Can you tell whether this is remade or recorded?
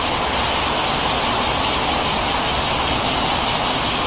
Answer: recorded